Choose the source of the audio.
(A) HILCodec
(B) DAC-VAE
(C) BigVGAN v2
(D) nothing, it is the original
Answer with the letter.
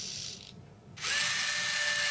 D